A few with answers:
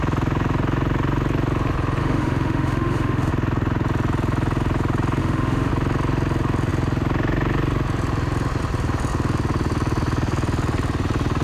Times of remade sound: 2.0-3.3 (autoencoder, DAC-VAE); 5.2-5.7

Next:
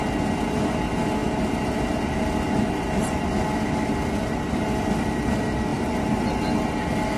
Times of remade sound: 5.7-6.4 (vocoder, BigVGAN v2)

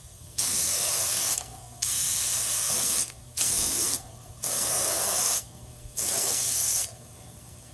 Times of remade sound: 0.0-7.7 (codec, SNAC)